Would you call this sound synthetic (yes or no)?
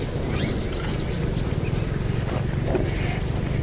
no